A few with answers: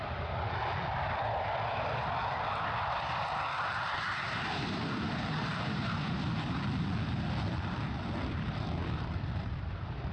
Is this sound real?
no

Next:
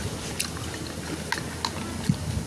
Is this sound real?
yes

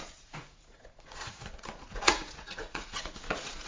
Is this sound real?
no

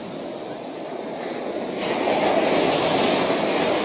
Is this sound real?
yes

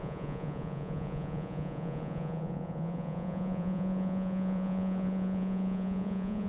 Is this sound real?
no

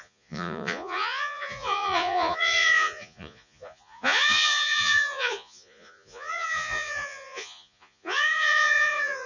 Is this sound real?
no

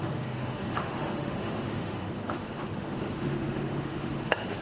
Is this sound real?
no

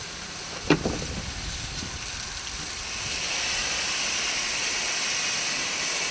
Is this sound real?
yes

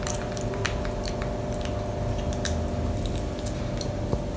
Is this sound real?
yes